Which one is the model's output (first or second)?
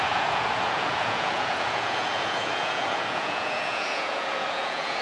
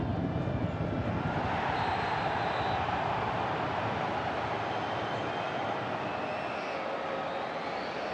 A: first